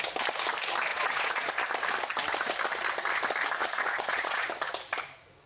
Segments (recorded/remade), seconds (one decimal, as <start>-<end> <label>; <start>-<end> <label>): 0.0-0.9 recorded; 0.9-1.5 remade; 1.5-3.6 recorded; 3.6-4.5 remade; 4.5-5.5 recorded